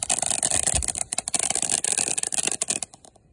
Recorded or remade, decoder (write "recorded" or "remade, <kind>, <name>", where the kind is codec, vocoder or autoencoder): recorded